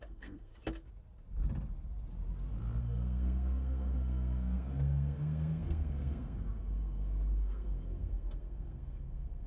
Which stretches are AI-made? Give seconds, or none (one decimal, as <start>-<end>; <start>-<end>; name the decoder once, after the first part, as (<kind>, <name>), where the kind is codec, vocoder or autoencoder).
0.0-0.5 (codec, SNAC); 2.8-9.5